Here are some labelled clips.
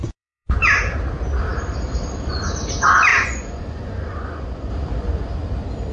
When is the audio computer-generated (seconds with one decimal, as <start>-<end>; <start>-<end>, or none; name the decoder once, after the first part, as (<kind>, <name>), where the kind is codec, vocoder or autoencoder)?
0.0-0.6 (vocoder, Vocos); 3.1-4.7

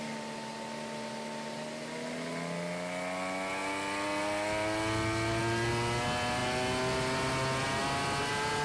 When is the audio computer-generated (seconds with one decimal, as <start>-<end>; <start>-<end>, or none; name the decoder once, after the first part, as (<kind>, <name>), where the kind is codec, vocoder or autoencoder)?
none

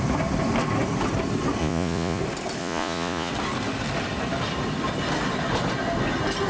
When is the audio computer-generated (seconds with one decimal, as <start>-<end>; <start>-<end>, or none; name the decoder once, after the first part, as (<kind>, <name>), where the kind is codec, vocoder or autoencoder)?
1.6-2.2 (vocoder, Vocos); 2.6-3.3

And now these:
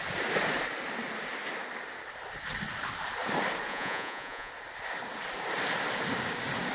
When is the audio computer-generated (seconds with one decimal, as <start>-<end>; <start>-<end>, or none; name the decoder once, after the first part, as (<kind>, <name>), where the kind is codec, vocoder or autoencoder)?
3.7-4.5 (vocoder, Vocos)